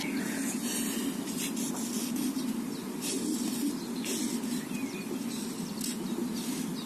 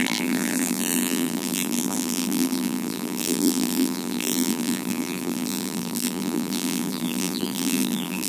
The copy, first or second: second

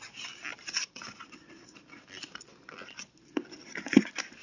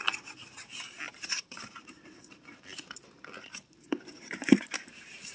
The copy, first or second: second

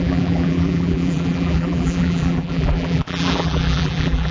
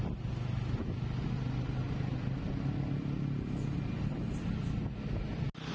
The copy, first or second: first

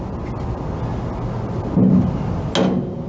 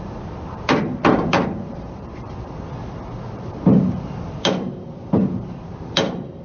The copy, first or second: second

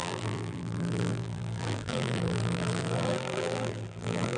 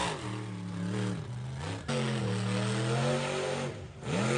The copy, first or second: first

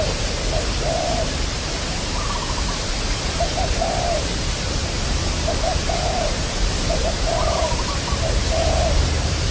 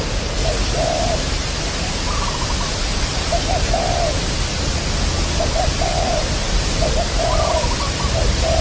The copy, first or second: first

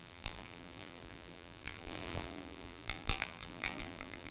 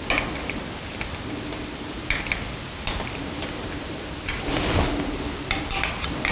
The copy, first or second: first